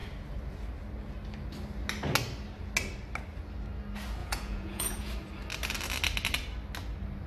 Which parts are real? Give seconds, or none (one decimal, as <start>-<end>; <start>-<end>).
0.0-4.2; 5.1-7.3